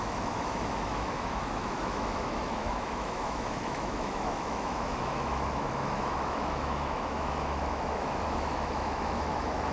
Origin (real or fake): fake